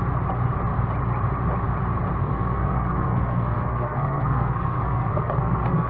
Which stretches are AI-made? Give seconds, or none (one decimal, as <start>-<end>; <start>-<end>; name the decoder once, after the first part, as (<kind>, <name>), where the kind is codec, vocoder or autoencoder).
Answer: 2.2-5.9 (codec, SNAC)